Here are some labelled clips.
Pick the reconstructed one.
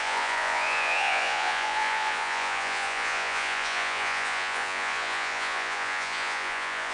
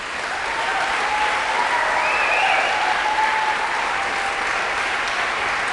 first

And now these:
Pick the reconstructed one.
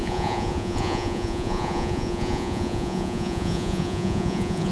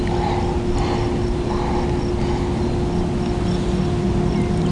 first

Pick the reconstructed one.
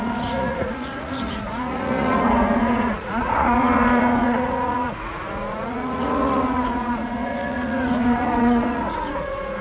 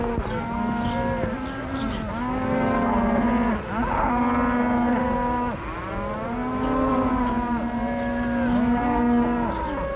first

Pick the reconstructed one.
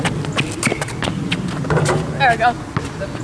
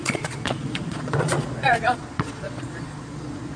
second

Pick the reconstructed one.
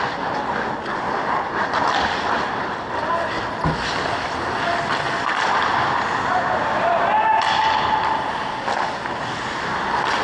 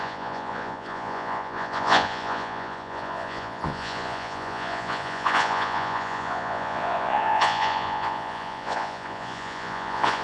second